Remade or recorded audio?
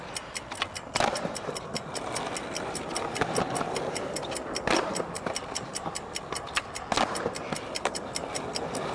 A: recorded